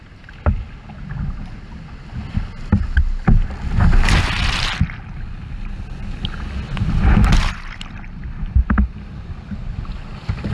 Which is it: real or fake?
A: real